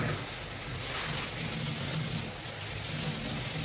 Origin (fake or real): real